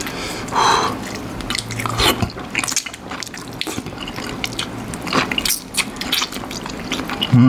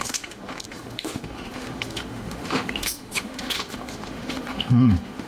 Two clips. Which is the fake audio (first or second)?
second